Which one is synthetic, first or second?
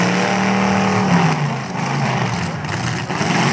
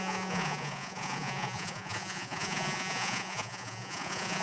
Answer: second